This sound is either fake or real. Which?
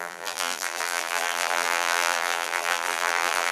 fake